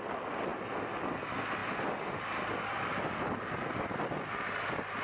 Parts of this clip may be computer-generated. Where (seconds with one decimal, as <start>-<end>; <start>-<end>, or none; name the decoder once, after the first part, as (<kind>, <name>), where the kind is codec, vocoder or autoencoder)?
none